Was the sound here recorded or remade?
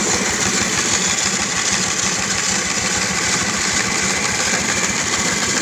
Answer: recorded